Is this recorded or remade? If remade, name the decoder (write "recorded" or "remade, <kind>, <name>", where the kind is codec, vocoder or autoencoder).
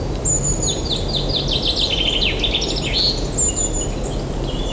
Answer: recorded